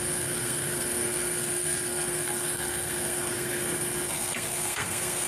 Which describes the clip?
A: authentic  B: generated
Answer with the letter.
B